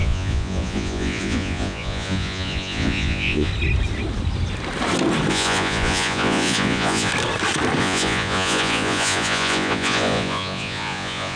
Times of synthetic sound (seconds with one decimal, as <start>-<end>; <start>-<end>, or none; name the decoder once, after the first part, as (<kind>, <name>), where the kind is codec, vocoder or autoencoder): 0.0-3.5 (vocoder, Vocos); 5.3-7.1; 7.8-11.4